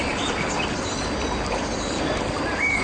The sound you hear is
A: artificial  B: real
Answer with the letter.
B